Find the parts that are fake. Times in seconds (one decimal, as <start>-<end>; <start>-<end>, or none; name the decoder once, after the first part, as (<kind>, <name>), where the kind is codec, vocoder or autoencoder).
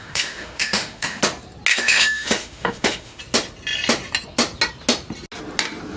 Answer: 0.0-1.2 (autoencoder, DAC-VAE); 1.7-3.2